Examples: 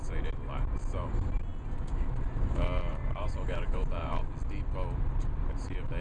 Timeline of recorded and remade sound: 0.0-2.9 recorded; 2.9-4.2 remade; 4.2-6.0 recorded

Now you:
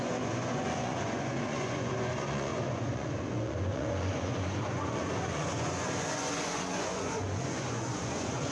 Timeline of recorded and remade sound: 0.0-8.5 remade

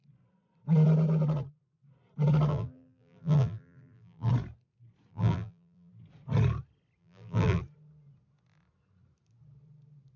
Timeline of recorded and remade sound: 0.0-2.5 recorded; 2.5-4.3 remade; 4.3-5.1 recorded; 5.1-5.9 remade; 5.9-7.0 recorded; 7.0-7.6 remade; 7.6-10.2 recorded

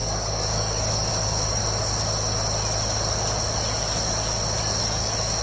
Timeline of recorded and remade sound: 0.0-1.6 remade; 1.6-4.8 recorded; 4.8-5.4 remade

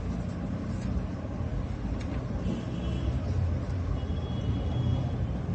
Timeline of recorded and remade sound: 0.0-5.5 recorded

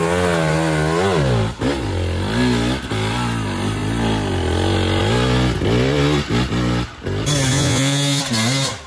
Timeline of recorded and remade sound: 0.0-7.5 recorded; 7.5-8.2 remade; 8.2-8.9 recorded

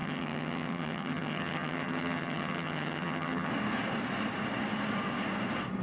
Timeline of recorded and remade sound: 0.0-3.5 remade; 3.5-5.8 recorded